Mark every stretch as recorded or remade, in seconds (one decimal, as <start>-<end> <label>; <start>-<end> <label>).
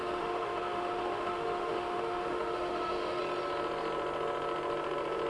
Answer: 0.0-3.2 remade; 3.2-5.3 recorded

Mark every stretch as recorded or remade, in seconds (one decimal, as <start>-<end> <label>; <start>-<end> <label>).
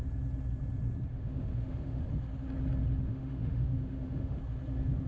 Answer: 0.0-1.1 recorded; 1.1-2.0 remade; 2.0-3.1 recorded; 3.1-4.4 remade; 4.4-5.1 recorded